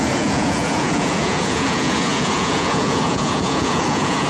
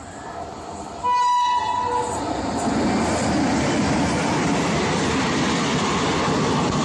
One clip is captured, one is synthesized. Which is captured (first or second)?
second